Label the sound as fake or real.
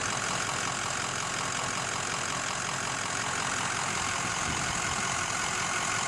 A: fake